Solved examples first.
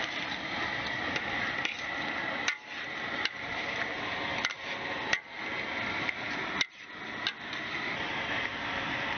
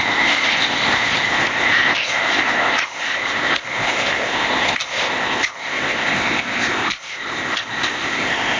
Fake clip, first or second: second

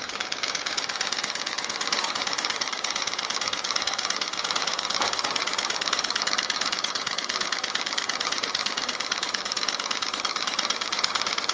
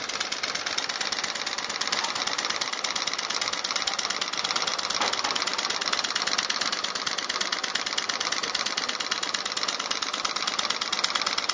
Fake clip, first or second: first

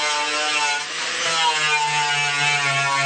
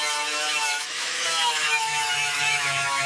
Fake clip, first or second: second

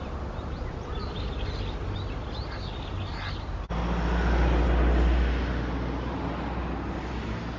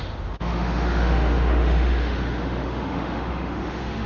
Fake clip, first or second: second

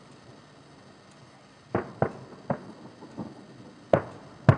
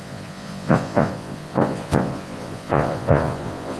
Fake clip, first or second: second